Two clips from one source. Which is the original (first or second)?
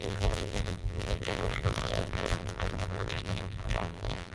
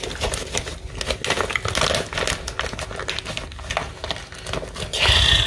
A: second